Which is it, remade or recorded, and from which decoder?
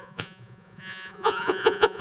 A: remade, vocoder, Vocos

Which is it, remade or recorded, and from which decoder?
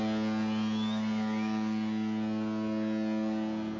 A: recorded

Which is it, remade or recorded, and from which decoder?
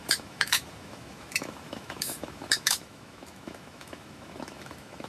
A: remade, autoencoder, DAC-VAE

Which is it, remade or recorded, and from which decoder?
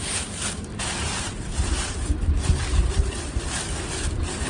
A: remade, vocoder, BigVGAN v2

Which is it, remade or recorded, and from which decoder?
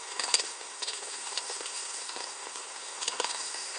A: remade, codec, SNAC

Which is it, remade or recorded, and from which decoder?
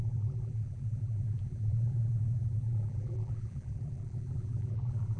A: remade, vocoder, BigVGAN v2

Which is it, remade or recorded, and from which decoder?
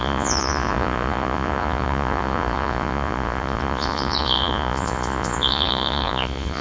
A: remade, vocoder, Vocos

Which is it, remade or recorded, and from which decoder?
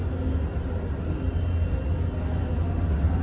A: recorded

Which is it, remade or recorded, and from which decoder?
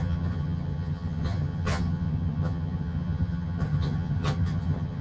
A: remade, vocoder, HiFi-GAN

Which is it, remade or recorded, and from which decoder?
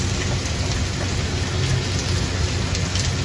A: recorded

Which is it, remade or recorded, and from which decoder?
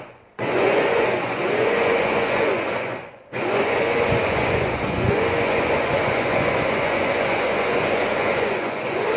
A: remade, vocoder, Vocos